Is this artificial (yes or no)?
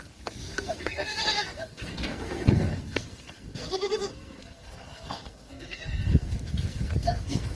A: yes